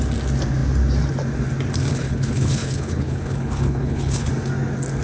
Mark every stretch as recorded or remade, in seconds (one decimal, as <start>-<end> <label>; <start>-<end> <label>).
0.0-1.9 recorded; 1.9-4.3 remade; 4.3-5.0 recorded